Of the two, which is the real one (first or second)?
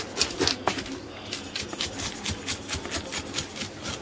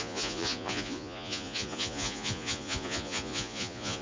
first